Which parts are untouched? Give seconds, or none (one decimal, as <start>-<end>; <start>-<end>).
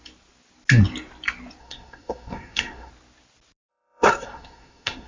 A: 0.0-1.6; 2.9-3.7